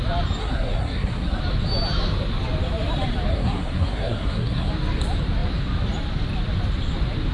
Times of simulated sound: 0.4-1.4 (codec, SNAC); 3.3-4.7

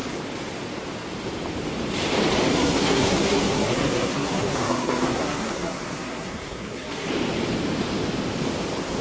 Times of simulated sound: 2.5-7.1 (codec, SNAC)